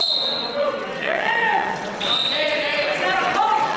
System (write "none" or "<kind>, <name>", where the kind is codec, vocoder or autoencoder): vocoder, WaveNeXt